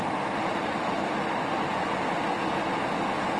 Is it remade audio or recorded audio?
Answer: recorded